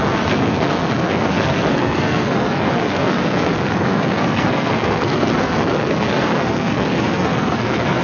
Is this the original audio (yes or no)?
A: no